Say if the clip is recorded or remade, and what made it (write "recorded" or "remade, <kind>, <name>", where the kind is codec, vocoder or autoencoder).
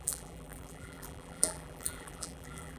remade, vocoder, BigVGAN v2